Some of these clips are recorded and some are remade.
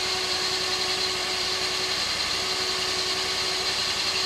recorded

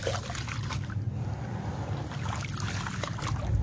recorded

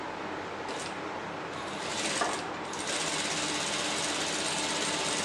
recorded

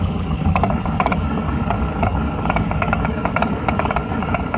remade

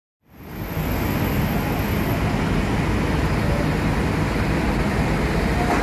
recorded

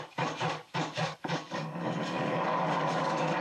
remade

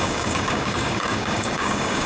remade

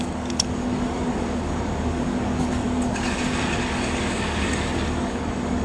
remade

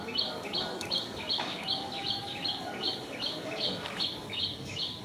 remade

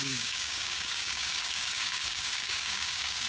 remade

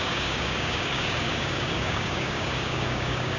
remade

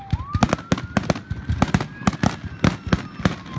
recorded